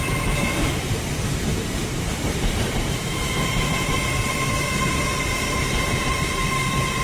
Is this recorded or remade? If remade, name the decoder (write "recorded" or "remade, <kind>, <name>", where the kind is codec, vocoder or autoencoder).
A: remade, vocoder, BigVGAN v2